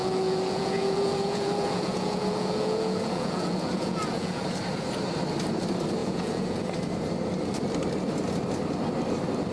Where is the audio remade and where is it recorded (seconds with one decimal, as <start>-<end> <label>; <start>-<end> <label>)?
0.0-4.4 remade; 4.4-6.0 recorded; 6.0-6.6 remade; 6.6-9.5 recorded